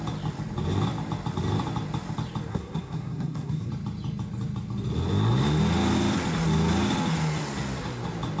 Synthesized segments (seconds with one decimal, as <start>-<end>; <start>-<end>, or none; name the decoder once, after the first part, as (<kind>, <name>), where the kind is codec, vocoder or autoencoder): 2.5-3.7 (codec, SNAC)